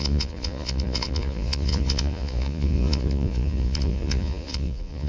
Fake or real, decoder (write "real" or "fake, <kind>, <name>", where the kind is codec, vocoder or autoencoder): fake, vocoder, Vocos